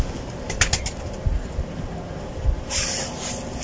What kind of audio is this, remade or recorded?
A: recorded